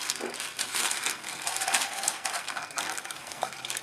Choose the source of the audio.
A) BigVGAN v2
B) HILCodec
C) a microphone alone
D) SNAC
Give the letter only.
D